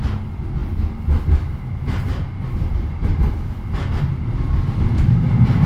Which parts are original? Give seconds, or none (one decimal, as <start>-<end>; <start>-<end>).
0.0-5.7